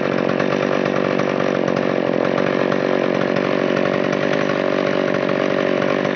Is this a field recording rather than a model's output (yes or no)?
yes